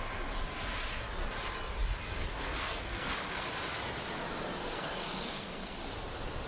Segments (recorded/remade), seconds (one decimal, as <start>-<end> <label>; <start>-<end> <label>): 0.0-2.3 recorded; 2.3-3.5 remade; 3.5-4.6 recorded; 4.6-5.8 remade; 5.8-6.5 recorded